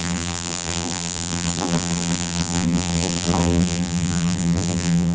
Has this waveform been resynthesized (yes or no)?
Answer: yes